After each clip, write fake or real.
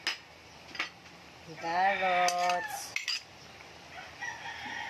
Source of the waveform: real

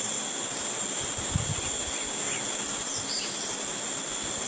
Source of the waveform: real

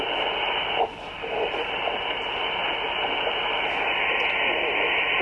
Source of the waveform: real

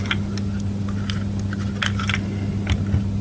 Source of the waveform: real